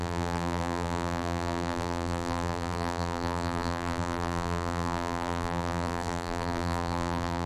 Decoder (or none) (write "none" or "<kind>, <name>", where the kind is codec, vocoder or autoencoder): vocoder, BigVGAN v2